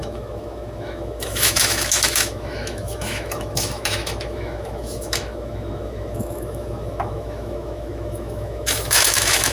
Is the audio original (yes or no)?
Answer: no